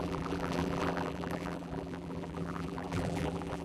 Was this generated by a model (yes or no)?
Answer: yes